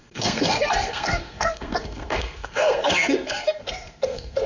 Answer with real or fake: fake